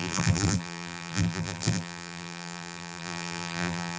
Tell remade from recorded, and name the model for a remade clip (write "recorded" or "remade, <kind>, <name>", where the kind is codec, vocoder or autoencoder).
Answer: remade, vocoder, BigVGAN v2